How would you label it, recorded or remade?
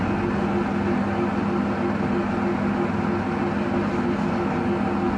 recorded